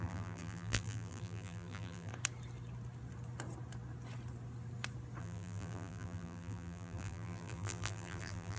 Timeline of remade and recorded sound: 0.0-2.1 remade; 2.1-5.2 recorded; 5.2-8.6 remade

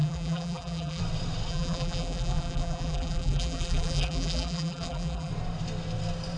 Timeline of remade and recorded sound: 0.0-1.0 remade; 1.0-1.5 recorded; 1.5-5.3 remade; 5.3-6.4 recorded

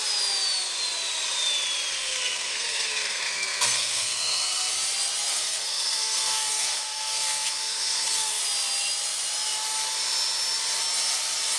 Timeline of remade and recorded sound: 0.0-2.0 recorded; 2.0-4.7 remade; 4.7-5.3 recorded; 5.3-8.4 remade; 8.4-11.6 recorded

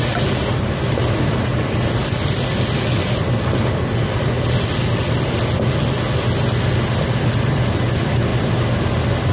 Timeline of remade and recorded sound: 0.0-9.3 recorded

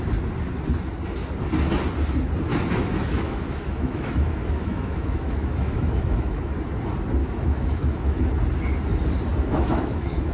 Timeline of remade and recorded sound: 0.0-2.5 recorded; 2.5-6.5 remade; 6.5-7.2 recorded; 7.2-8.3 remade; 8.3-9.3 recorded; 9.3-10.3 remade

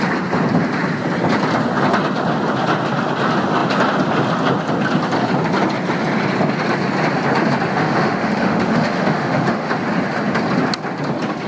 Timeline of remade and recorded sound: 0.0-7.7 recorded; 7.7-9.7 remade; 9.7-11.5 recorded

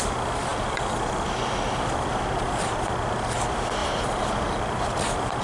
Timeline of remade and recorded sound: 0.0-3.8 recorded; 3.8-5.0 remade; 5.0-5.4 recorded